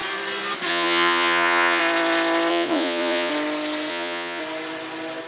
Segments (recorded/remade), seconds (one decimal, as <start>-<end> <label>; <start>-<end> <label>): 0.0-0.7 recorded; 0.7-1.8 remade; 1.8-2.5 recorded; 2.5-3.3 remade; 3.3-3.9 recorded; 3.9-4.4 remade; 4.4-5.3 recorded